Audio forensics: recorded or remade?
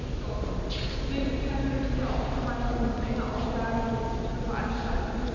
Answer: recorded